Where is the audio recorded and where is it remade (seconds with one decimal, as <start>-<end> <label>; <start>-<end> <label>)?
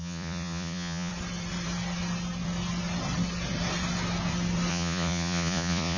0.0-1.1 remade; 1.1-4.7 recorded; 4.7-6.0 remade